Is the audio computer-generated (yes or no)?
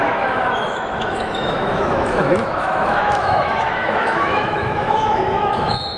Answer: yes